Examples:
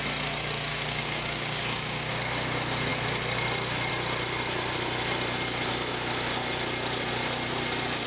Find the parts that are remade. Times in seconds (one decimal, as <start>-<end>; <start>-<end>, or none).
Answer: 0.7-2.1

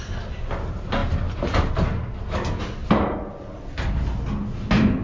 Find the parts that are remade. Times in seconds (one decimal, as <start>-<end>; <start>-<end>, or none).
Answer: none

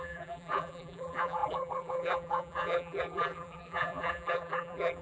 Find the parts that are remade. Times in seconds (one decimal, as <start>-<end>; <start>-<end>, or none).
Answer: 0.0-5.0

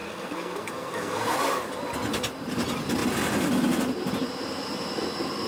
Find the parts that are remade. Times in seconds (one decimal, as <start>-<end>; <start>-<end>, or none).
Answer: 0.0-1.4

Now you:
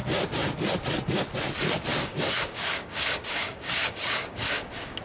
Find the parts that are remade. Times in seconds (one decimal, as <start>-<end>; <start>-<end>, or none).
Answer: 1.9-5.0

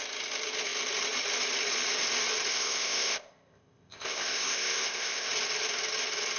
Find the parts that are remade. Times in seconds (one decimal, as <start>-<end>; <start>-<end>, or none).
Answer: 2.5-5.3